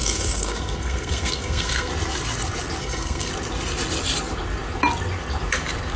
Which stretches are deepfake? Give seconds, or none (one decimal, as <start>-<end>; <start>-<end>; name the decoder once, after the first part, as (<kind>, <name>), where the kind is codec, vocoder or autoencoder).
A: 0.0-1.9 (codec, SNAC); 2.8-3.3